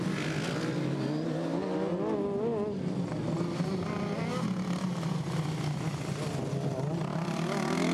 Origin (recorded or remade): recorded